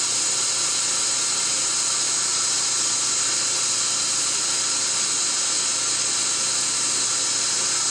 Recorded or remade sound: recorded